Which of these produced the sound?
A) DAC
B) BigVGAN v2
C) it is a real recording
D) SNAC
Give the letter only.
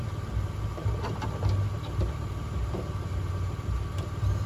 C